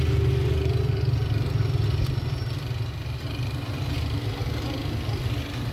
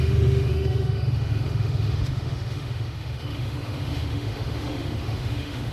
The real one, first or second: first